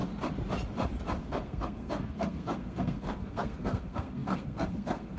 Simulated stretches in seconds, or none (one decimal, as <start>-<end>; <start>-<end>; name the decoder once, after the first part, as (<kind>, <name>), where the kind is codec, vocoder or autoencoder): 1.2-5.2 (codec, SNAC)